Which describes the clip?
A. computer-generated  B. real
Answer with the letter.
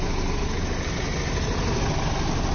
B